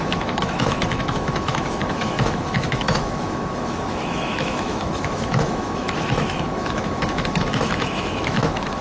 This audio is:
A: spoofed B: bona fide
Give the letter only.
A